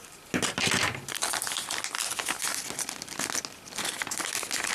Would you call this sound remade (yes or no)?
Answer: no